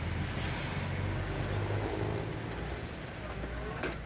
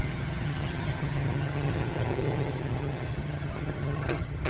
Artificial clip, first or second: second